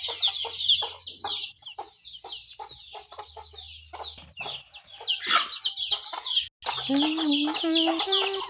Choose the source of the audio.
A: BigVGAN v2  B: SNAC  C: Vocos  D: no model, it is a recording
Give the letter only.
D